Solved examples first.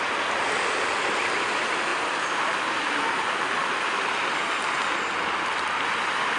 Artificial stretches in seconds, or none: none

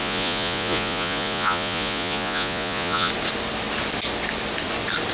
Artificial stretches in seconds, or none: 0.0-3.1 (vocoder, Vocos)

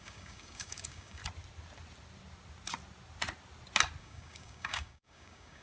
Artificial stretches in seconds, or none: 0.0-1.2 (codec, DAC); 4.0-5.6

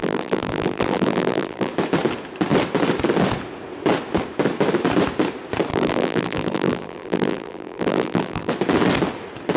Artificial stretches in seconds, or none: 0.0-1.7 (vocoder, BigVGAN v2); 5.7-8.5

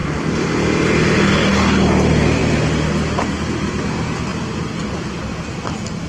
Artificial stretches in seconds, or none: none